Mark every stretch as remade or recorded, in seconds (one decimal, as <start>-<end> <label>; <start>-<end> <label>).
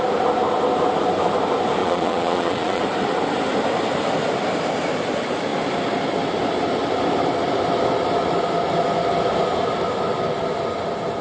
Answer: 0.0-1.8 recorded; 1.8-2.8 remade; 2.8-11.2 recorded